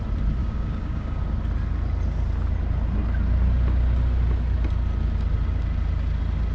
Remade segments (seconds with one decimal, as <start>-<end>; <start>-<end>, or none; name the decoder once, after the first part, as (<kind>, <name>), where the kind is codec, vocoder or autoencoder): 0.4-1.2 (codec, DAC)